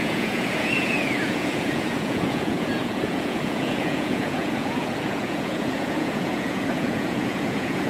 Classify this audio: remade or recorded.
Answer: remade